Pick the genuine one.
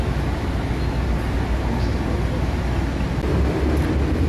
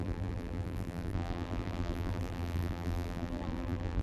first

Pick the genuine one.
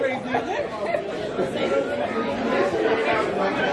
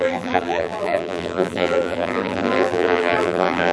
first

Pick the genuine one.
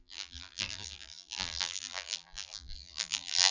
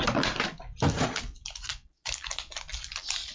second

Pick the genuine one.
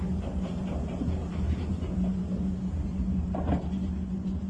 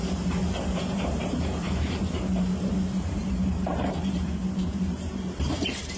first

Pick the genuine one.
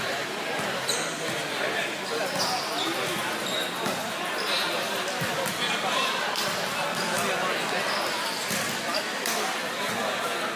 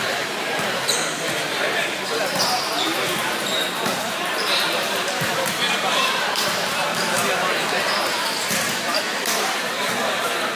first